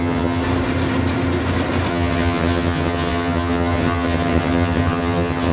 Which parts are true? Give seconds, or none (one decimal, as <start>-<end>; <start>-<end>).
0.4-1.9